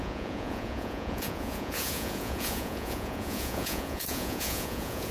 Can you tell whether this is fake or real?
fake